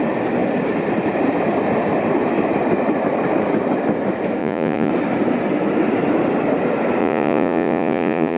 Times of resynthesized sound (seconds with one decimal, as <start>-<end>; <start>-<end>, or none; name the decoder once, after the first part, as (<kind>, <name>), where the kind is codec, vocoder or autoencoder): 4.4-4.9 (vocoder, Vocos); 7.0-8.4